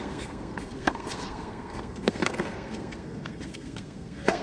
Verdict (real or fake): fake